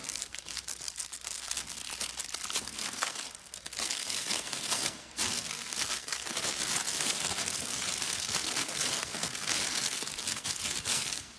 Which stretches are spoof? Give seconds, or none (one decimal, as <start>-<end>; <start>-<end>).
0.0-1.8; 2.6-11.4